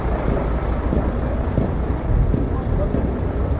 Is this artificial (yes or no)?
no